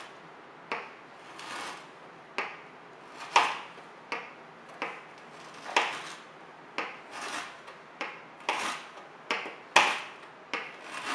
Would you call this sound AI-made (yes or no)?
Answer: no